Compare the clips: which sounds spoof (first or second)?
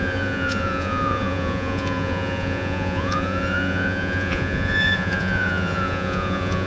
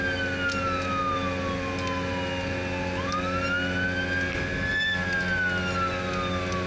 first